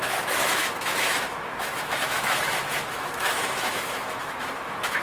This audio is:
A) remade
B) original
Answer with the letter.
A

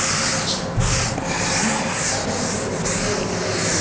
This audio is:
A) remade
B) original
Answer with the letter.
B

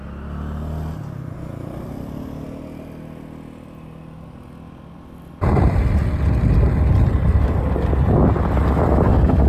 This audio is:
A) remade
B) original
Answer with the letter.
B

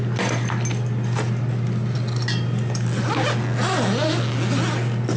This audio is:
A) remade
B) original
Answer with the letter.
B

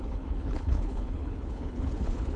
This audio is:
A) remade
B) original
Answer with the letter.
A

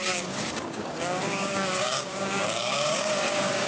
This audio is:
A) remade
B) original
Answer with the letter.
A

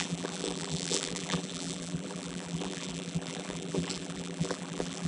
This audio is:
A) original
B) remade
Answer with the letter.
B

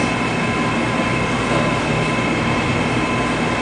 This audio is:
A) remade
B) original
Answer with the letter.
B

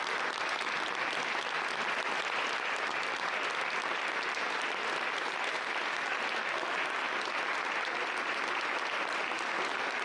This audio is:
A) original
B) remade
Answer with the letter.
A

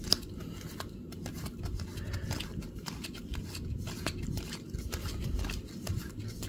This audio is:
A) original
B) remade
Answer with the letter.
A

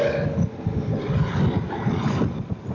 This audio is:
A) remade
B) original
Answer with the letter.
B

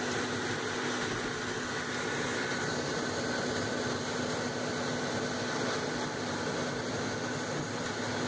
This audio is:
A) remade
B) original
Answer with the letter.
B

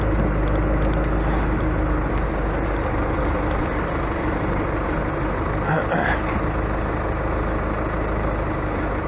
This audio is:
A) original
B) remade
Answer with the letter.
A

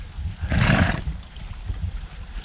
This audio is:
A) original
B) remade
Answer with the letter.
A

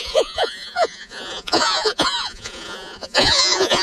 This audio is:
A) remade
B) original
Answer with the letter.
A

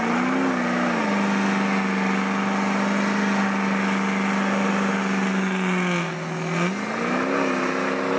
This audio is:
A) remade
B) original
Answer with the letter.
B